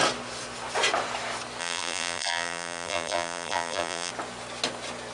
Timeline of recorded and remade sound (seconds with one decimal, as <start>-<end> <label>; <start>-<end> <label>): 0.0-1.6 recorded; 1.6-4.1 remade; 4.1-5.1 recorded